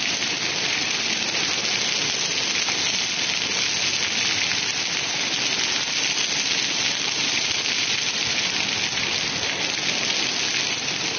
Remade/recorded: recorded